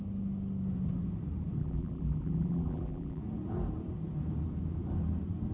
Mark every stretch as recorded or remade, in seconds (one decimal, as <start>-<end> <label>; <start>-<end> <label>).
0.0-1.6 recorded; 1.6-3.2 remade; 3.2-5.5 recorded